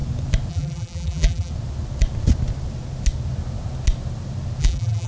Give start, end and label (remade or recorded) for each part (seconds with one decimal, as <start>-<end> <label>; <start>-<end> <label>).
0.0-0.5 recorded; 0.5-1.5 remade; 1.5-4.6 recorded; 4.6-5.1 remade